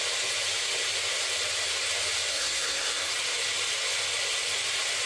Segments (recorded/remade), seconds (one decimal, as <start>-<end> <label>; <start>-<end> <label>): 0.0-2.3 recorded; 2.3-3.1 remade; 3.1-5.1 recorded

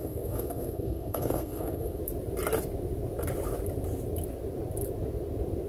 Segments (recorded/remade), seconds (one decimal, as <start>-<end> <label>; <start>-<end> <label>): 0.0-2.0 remade; 2.0-5.7 recorded

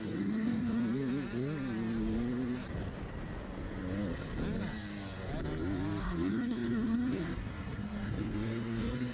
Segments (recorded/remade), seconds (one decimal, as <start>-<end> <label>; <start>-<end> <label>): 0.0-0.8 remade; 0.8-6.0 recorded; 6.0-9.1 remade

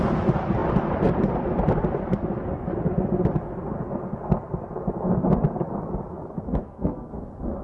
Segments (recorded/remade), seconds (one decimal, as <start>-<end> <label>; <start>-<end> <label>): 0.0-6.6 recorded; 6.6-7.1 remade; 7.1-7.6 recorded

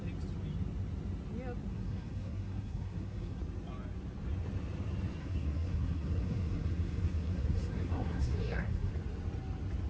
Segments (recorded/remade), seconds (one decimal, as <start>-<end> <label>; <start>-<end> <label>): 0.0-1.7 recorded; 1.7-3.4 remade; 3.4-5.2 recorded; 5.2-8.9 remade; 8.9-9.9 recorded

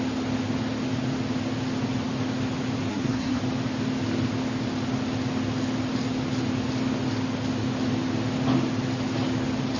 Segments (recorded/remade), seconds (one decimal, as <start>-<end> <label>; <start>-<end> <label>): 0.0-2.9 recorded; 2.9-3.4 remade; 3.4-9.8 recorded

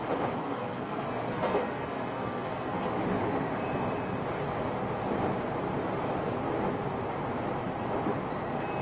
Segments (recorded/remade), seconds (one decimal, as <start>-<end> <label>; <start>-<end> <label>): 0.0-0.4 recorded; 0.4-2.8 remade; 2.8-8.8 recorded

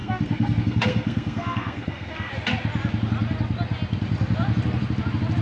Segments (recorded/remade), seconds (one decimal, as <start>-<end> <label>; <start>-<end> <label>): 0.0-2.3 remade; 2.3-5.4 recorded